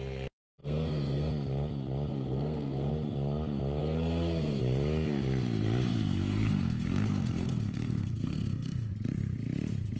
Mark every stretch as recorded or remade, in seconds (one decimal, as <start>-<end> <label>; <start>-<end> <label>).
0.0-0.6 recorded; 0.6-1.3 remade; 1.3-2.1 recorded; 2.1-2.9 remade; 2.9-3.8 recorded; 3.8-4.6 remade; 4.6-5.9 recorded; 5.9-8.9 remade; 8.9-10.0 recorded